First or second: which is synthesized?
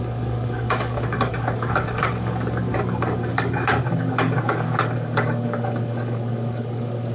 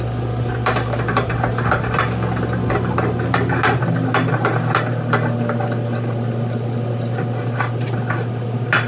first